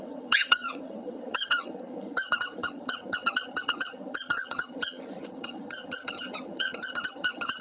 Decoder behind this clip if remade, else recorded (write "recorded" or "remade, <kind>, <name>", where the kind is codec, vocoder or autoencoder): remade, vocoder, HiFi-GAN